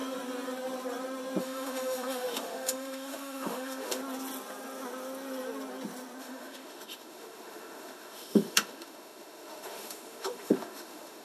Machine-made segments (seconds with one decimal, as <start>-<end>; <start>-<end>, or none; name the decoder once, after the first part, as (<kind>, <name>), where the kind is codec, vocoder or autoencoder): 1.4-4.0 (autoencoder, DAC-VAE); 6.2-11.2